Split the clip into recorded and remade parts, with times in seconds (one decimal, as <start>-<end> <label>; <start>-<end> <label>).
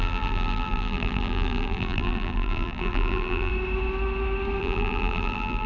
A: 0.0-3.5 remade; 3.5-4.6 recorded; 4.6-5.7 remade